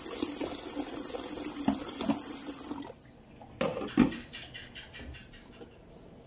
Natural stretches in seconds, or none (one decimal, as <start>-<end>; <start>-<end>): 0.0-6.3